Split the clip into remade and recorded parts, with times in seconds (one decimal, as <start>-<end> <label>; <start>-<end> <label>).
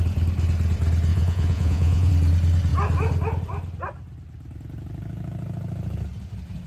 0.0-1.1 recorded; 1.1-2.1 remade; 2.1-6.7 recorded